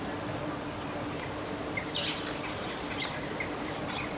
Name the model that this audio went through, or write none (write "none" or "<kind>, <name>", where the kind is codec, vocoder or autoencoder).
none